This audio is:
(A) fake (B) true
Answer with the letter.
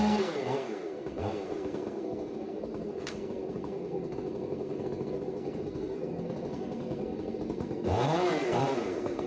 A